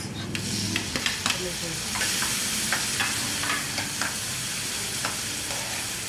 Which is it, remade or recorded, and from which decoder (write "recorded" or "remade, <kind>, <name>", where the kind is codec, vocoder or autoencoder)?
recorded